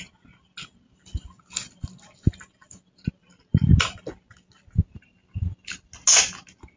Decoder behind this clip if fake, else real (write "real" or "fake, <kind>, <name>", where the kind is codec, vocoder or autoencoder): real